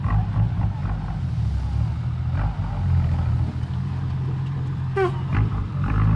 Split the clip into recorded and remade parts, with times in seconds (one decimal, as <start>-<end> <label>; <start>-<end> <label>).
0.0-0.8 remade; 0.8-3.3 recorded; 3.3-6.2 remade